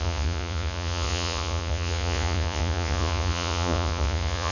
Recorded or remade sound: remade